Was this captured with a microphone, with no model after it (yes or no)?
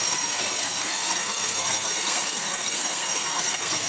no